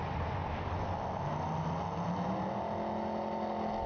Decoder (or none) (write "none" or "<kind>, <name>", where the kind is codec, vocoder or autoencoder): none